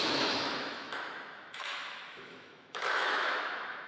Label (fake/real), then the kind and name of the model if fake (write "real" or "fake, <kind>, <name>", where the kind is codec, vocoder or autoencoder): fake, autoencoder, DAC-VAE